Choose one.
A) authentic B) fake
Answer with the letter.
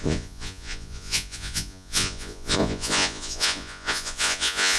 B